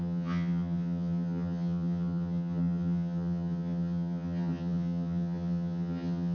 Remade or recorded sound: remade